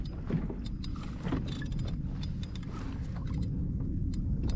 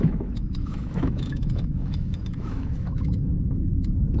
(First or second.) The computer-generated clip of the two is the second